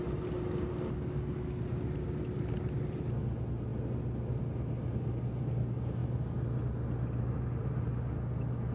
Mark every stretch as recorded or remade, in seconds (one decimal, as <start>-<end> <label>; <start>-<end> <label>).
0.0-8.7 recorded

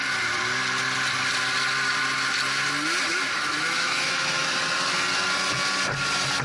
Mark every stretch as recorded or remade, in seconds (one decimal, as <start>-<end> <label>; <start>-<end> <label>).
0.0-3.5 recorded; 3.5-4.6 remade; 4.6-6.4 recorded

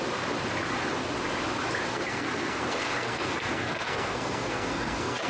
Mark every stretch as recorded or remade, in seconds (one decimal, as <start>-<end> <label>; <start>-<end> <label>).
0.0-1.9 recorded; 1.9-5.3 remade

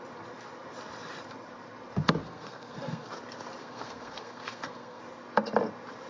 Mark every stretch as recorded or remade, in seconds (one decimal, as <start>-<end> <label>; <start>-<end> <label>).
0.0-2.2 recorded; 2.2-3.1 remade; 3.1-3.6 recorded; 3.6-5.0 remade; 5.0-6.1 recorded

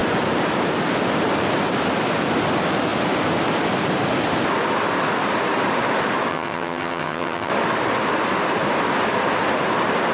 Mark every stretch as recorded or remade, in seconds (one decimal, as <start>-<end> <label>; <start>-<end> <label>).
0.0-6.3 recorded; 6.3-7.5 remade; 7.5-10.1 recorded